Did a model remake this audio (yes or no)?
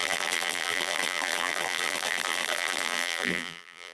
yes